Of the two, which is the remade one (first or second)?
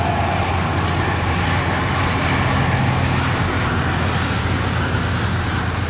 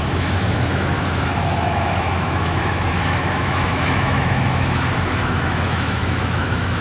second